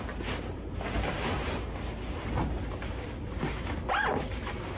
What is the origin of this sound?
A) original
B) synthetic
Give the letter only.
A